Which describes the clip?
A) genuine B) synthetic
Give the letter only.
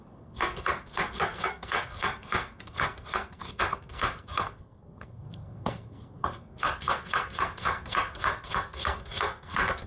B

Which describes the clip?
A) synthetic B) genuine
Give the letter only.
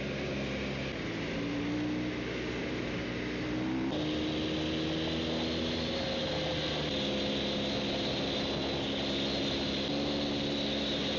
B